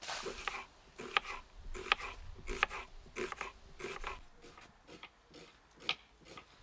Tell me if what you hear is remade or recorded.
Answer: recorded